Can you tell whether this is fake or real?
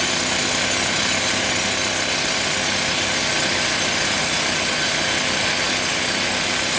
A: real